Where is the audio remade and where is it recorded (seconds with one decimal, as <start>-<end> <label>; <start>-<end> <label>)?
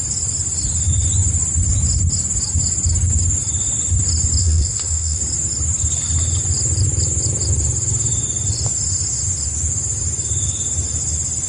0.0-4.4 recorded; 4.4-5.2 remade; 5.2-11.5 recorded